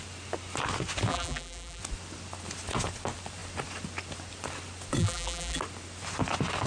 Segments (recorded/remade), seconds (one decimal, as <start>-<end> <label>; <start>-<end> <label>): 0.0-1.1 recorded; 1.1-1.8 remade; 1.8-5.0 recorded; 5.0-5.6 remade; 5.6-6.7 recorded